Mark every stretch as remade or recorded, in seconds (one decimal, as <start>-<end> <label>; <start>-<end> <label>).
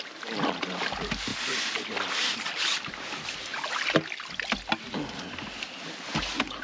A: 0.0-6.6 recorded